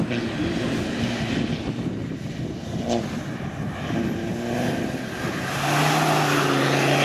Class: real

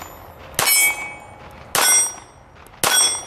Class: real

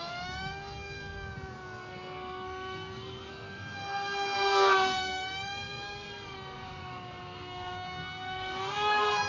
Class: fake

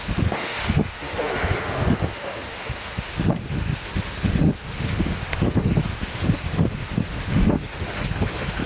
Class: fake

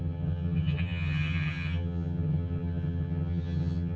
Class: fake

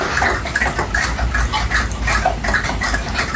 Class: real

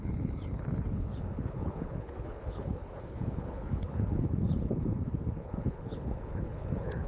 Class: fake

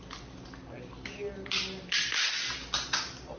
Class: real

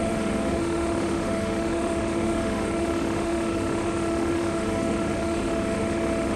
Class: fake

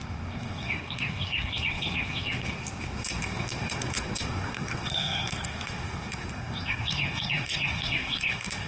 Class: fake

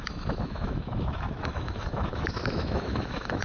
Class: fake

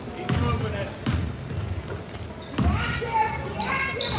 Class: real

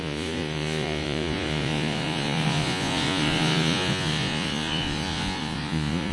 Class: fake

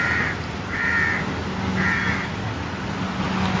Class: real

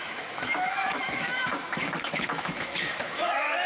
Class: fake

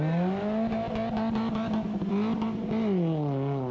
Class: real